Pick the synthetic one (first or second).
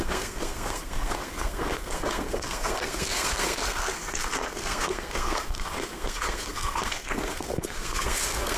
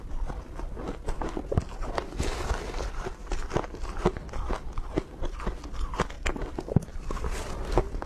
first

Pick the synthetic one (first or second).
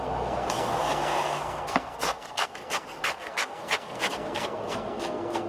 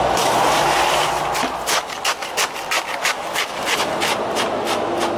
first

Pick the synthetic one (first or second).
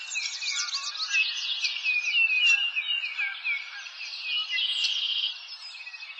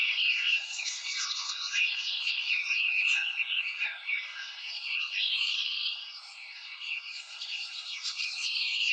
second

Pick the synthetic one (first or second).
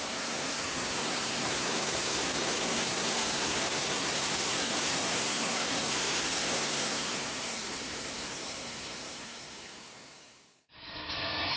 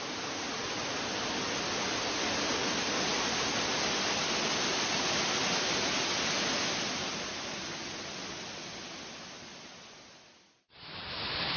first